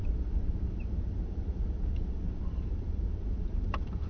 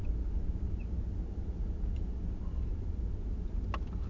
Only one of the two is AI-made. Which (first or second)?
first